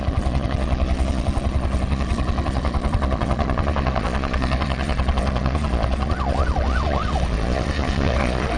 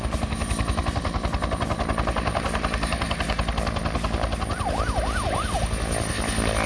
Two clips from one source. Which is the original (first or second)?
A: second